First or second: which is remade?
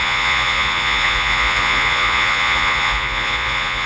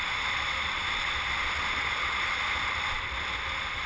first